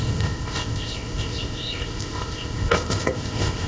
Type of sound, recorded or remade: remade